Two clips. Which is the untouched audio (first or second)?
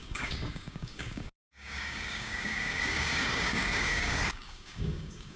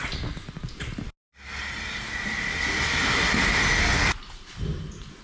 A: second